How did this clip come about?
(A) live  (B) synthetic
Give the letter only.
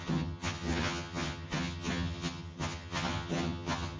B